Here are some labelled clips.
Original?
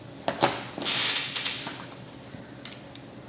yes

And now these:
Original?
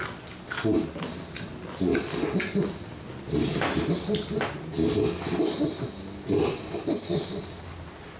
yes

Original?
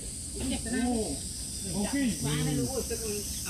yes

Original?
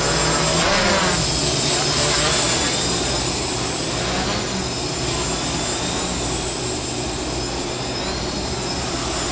yes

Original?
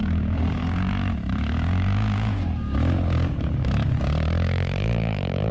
no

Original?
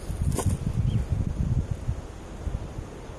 yes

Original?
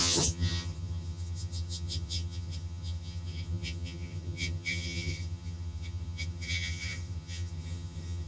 no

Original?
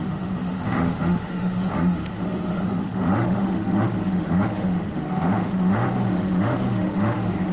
no